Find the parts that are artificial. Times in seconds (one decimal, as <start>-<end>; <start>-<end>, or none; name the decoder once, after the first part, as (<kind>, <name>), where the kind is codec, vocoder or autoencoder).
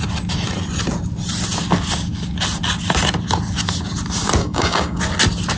4.4-5.0 (codec, DAC)